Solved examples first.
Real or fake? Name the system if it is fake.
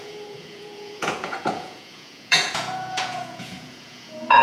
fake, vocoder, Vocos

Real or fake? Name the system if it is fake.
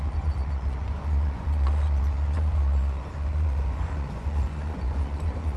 fake, vocoder, Vocos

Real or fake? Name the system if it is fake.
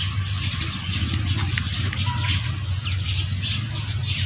real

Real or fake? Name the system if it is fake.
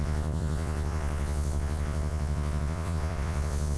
fake, vocoder, Vocos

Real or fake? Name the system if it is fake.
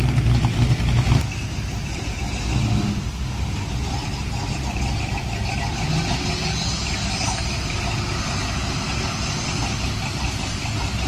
real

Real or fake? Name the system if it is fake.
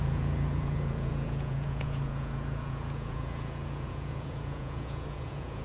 fake, vocoder, Vocos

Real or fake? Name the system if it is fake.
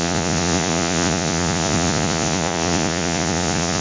fake, vocoder, Vocos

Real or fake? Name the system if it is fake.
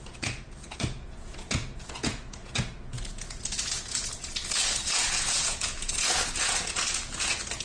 fake, vocoder, Vocos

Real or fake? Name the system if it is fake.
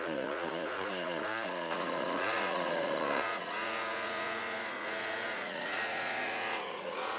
fake, vocoder, Vocos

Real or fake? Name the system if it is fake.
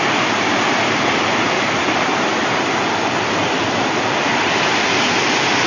real